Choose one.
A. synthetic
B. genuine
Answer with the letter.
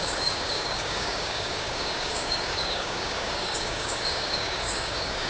A